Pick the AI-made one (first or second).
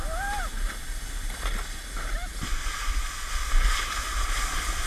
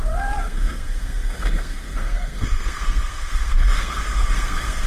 second